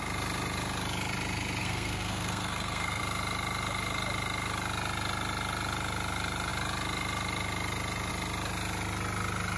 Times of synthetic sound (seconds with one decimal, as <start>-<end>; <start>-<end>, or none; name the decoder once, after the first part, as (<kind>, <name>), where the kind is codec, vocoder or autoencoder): 1.6-3.0 (codec, SNAC)